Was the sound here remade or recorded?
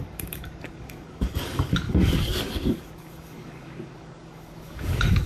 remade